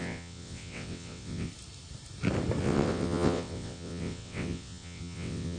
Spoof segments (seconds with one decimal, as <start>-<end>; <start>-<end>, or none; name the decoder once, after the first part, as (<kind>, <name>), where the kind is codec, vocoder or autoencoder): 0.0-1.5 (vocoder, WaveNeXt); 2.6-5.6